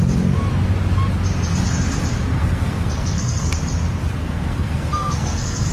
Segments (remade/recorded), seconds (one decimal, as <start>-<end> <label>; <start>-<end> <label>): 0.0-2.3 recorded; 2.3-3.5 remade; 3.5-4.2 recorded; 4.2-5.7 remade